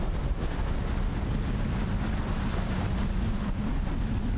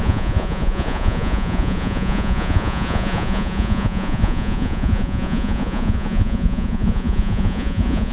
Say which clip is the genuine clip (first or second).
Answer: first